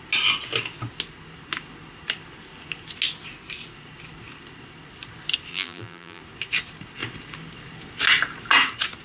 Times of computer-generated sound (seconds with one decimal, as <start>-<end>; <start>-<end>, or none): 5.5-6.2